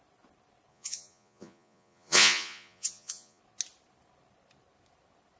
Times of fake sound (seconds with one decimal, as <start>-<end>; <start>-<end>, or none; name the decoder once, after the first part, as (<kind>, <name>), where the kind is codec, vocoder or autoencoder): 0.7-3.4 (vocoder, Vocos)